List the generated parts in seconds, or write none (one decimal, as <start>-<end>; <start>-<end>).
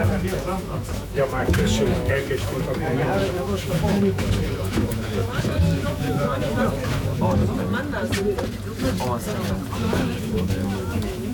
0.0-7.4; 9.7-11.3